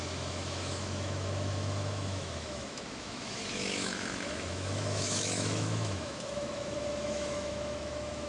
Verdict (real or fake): fake